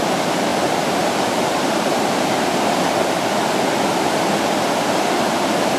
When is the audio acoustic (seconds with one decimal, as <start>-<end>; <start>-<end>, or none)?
0.0-0.5; 2.3-5.8